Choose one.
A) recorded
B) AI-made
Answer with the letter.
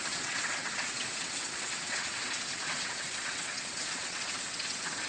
B